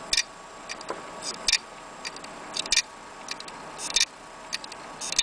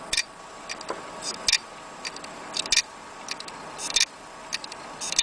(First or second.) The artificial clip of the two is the second